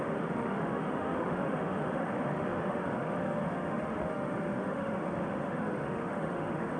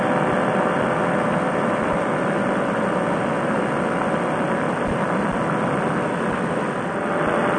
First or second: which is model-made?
first